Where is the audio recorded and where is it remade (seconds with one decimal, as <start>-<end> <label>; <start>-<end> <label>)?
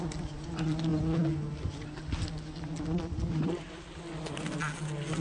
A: 0.0-5.2 recorded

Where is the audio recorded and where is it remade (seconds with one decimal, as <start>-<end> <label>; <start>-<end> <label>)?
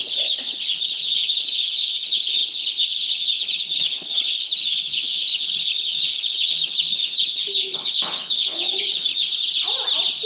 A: 0.0-9.1 remade; 9.1-10.3 recorded